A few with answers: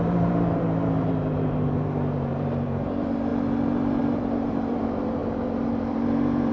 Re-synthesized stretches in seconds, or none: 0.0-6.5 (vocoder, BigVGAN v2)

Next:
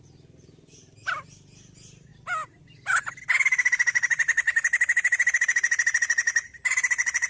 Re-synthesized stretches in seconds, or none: none

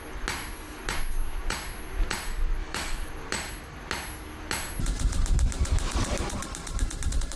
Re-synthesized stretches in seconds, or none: 2.6-3.1 (autoencoder, DAC-VAE)

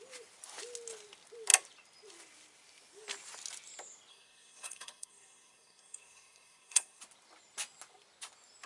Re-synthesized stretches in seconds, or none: 4.1-7.0 (codec, SNAC)

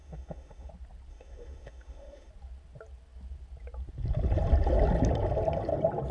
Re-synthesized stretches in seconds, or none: 0.0-0.7 (autoencoder, DAC-VAE); 1.1-2.3

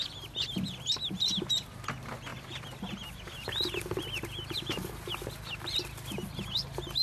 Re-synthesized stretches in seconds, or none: 2.3-4.9 (vocoder, BigVGAN v2)